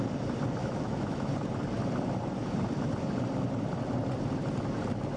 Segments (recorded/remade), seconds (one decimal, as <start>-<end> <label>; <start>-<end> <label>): 0.0-0.6 recorded; 0.6-1.3 remade; 1.3-5.2 recorded